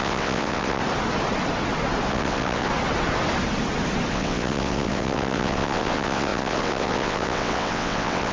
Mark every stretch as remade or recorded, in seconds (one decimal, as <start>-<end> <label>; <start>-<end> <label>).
0.0-0.8 remade; 0.8-2.1 recorded; 2.1-2.7 remade; 2.7-4.1 recorded; 4.1-8.3 remade